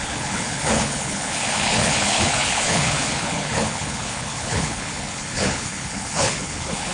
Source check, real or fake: fake